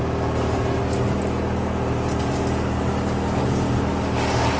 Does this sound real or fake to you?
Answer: real